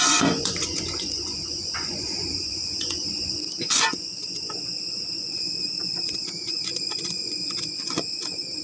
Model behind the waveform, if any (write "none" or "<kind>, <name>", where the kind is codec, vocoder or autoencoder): vocoder, Vocos